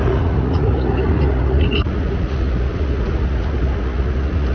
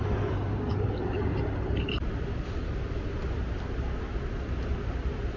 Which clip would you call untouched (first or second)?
second